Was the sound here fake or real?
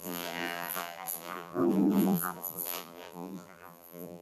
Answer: fake